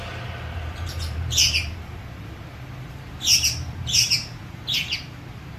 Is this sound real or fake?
fake